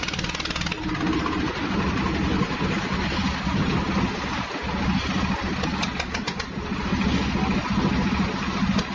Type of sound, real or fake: real